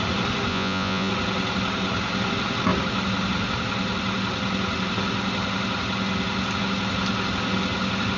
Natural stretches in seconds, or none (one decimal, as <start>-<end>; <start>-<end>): 0.0-0.5; 1.1-8.2